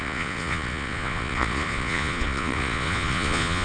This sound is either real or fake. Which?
fake